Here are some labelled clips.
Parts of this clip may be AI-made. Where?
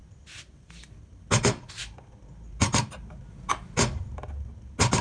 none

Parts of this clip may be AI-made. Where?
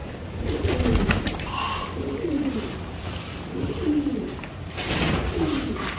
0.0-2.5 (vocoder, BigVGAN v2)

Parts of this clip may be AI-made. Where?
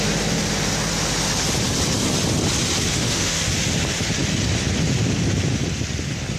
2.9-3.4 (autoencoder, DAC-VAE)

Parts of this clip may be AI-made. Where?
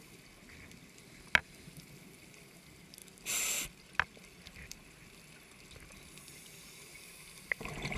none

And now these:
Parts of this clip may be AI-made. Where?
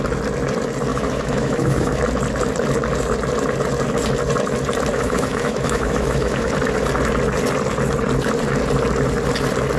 0.9-2.0 (autoencoder, DAC-VAE); 4.9-6.5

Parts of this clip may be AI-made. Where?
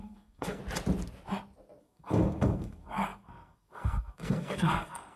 0.0-0.6 (codec, SNAC); 1.8-5.2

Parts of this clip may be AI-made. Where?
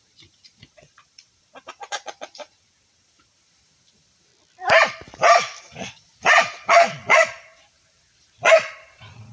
0.0-4.3 (vocoder, Vocos); 5.6-9.3